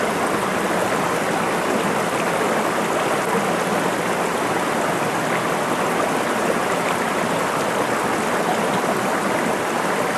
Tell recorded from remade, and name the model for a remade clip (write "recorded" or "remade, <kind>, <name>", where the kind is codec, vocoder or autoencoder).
recorded